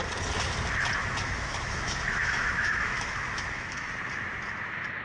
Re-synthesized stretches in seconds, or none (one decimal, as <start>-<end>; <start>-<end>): 1.0-3.9